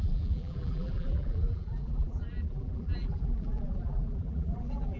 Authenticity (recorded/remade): remade